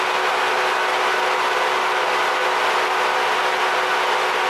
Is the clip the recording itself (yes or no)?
yes